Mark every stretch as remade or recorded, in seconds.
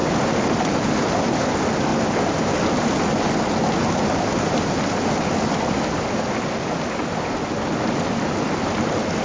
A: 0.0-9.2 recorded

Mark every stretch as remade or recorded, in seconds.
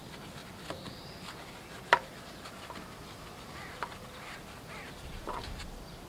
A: 0.0-6.1 recorded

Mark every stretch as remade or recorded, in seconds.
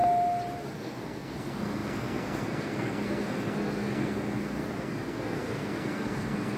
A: 0.0-0.7 recorded; 0.7-6.6 remade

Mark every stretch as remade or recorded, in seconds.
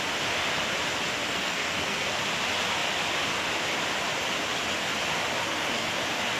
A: 0.0-1.3 recorded; 1.3-2.2 remade; 2.2-5.4 recorded; 5.4-5.9 remade; 5.9-6.4 recorded